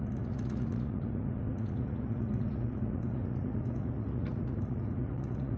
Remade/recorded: remade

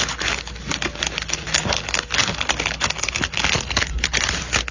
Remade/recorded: recorded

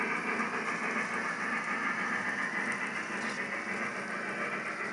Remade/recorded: recorded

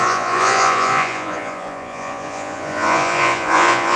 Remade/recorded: remade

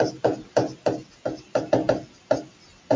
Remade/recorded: recorded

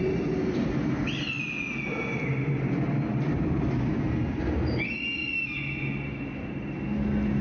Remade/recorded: recorded